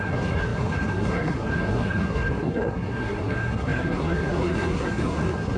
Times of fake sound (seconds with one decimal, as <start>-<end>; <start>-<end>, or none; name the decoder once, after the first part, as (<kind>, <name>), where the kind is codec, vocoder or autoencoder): 0.0-5.6 (codec, SNAC)

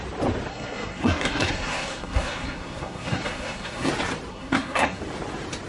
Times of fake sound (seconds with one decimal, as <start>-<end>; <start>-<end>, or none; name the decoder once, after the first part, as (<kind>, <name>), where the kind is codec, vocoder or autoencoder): 0.5-3.9 (codec, SNAC); 4.3-5.0

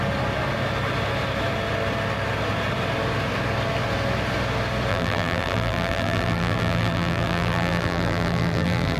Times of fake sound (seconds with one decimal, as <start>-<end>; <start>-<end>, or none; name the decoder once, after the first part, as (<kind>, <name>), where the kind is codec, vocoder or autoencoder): 4.9-9.0 (vocoder, BigVGAN v2)

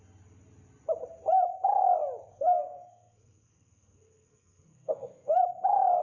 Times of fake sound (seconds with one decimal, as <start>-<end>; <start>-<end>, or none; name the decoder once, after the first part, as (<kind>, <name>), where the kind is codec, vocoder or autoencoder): 2.3-5.3 (codec, SNAC)